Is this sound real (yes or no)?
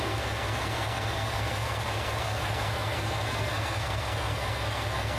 no